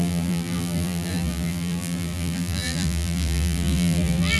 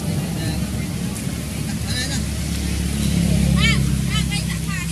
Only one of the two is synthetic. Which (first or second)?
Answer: first